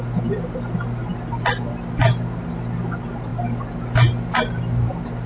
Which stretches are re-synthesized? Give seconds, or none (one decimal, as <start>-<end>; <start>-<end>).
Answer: none